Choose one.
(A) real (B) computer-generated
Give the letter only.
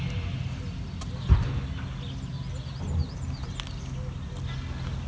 A